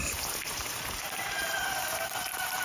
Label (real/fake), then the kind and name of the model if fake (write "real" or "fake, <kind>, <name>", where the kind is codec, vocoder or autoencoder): fake, vocoder, BigVGAN v2